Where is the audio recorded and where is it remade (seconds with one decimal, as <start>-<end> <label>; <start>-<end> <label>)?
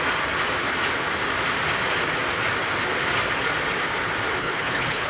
0.0-4.4 recorded; 4.4-5.1 remade